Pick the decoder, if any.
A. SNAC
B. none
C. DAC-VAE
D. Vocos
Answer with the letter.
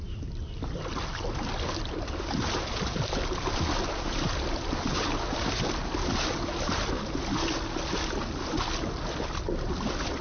B